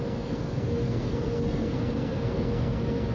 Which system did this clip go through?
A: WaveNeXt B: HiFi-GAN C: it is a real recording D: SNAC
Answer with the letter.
D